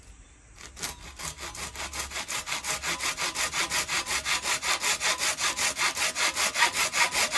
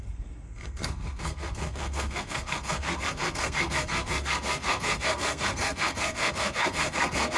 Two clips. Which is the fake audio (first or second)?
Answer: second